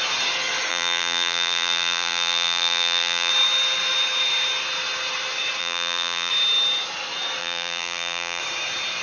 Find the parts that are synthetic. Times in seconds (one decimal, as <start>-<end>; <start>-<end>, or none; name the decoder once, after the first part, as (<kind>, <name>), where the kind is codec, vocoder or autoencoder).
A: 0.7-3.3 (vocoder, BigVGAN v2); 5.6-6.3; 7.4-8.4